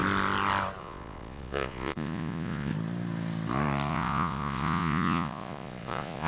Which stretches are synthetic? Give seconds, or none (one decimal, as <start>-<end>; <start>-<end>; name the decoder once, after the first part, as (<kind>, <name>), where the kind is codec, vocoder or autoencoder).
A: 0.8-2.7 (vocoder, Vocos); 3.9-6.3